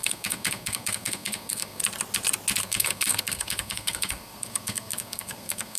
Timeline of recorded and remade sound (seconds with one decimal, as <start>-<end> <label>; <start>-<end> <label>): 0.0-1.8 remade; 1.8-2.6 recorded; 2.6-5.8 remade